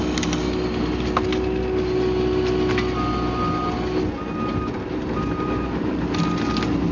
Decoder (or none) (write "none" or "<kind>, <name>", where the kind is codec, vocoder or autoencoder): none